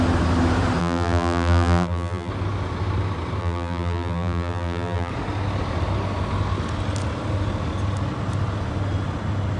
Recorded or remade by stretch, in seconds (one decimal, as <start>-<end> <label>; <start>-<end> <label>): 0.0-0.8 recorded; 0.8-2.3 remade; 2.3-3.4 recorded; 3.4-5.1 remade; 5.1-9.6 recorded

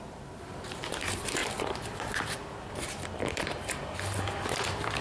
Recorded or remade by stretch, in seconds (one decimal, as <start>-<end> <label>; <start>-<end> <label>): 0.0-5.0 remade

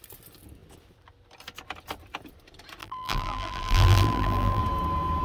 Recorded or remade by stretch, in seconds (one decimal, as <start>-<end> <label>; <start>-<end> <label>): 0.0-2.8 recorded; 2.8-4.6 remade; 4.6-5.2 recorded